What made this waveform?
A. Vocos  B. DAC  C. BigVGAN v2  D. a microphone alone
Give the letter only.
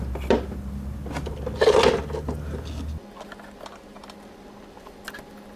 D